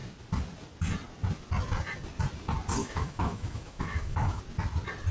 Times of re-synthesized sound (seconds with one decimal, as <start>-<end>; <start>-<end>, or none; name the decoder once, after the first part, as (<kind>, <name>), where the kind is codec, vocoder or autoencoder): 2.8-4.4 (autoencoder, DAC-VAE)